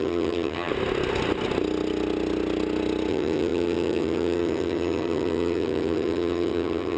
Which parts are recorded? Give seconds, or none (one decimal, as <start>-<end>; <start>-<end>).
0.7-3.1